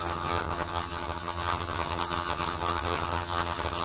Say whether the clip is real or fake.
fake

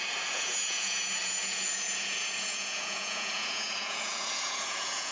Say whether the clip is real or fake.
fake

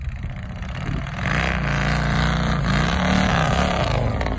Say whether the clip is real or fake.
real